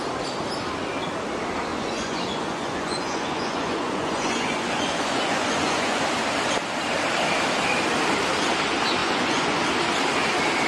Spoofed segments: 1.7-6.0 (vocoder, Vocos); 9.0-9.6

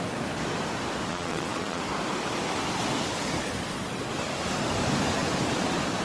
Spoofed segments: 1.1-1.8 (vocoder, Vocos)

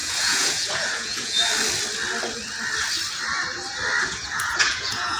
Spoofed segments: 0.0-1.4 (vocoder, Vocos); 4.0-5.2

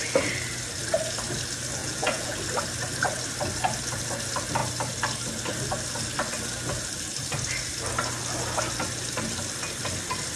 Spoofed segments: 1.8-2.4 (vocoder, Vocos)

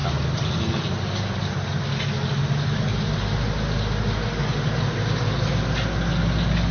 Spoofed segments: none

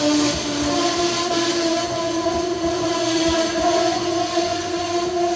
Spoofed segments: 1.7-4.9 (vocoder, Vocos)

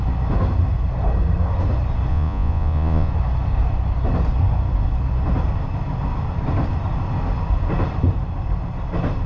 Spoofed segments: 2.1-3.1 (vocoder, Vocos)

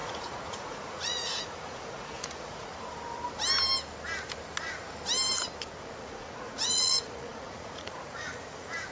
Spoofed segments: 0.0-2.7 (vocoder, Vocos); 6.0-8.9